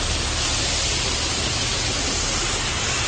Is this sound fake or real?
real